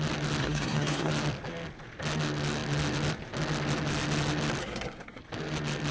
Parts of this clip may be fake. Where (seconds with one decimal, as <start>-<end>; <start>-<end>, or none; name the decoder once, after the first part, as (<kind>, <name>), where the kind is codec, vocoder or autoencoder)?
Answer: 0.4-1.1 (codec, SNAC); 4.6-5.2